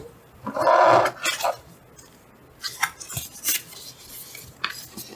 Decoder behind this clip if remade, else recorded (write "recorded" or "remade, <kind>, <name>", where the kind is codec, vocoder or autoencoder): recorded